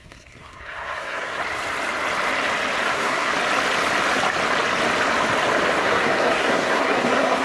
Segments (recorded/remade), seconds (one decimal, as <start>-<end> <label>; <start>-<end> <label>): 0.0-1.4 remade; 1.4-2.9 recorded; 2.9-3.3 remade; 3.3-5.8 recorded; 5.8-7.4 remade